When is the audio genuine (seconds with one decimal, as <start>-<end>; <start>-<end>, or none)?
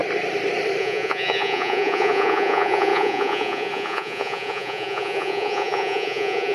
0.0-0.8